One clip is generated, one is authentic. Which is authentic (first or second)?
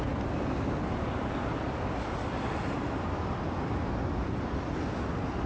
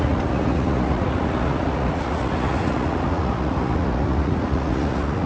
first